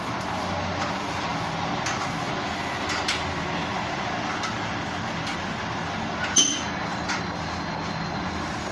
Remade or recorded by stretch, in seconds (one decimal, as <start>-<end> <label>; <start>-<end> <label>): 0.0-8.7 recorded